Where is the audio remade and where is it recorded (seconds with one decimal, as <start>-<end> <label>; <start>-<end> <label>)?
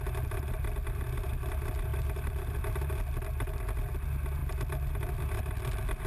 0.0-1.9 recorded; 1.9-2.4 remade; 2.4-6.1 recorded